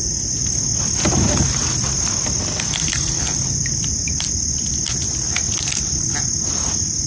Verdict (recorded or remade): recorded